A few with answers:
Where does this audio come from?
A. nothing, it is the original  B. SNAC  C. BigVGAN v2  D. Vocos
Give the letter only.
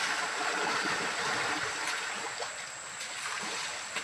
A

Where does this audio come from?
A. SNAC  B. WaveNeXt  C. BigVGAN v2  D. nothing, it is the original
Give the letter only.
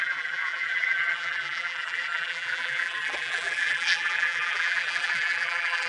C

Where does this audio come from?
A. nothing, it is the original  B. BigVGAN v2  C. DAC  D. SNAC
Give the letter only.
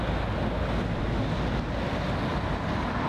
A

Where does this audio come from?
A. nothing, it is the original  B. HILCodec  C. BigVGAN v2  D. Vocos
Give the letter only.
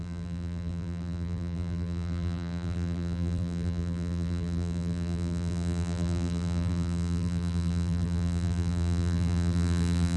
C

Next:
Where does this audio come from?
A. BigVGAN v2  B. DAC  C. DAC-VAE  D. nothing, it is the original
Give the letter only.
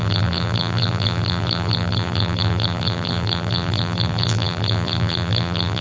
A